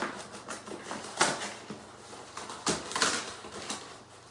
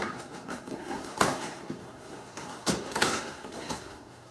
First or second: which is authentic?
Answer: first